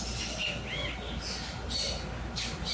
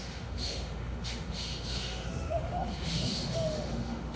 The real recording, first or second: first